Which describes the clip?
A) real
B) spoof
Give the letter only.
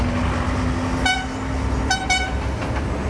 A